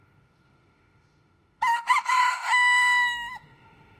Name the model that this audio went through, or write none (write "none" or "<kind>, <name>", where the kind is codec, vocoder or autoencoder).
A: autoencoder, DAC-VAE